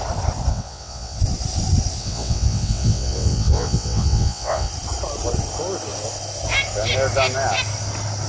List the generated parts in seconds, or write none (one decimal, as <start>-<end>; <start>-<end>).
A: 0.5-1.2; 2.0-4.7